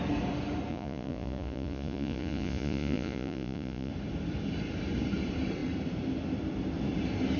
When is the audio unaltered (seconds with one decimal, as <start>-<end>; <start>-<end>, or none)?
0.0-0.7; 3.9-7.4